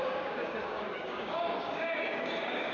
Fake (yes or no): yes